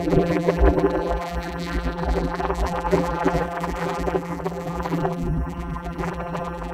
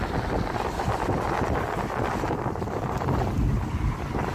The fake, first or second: first